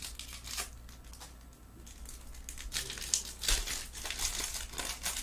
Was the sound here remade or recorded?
recorded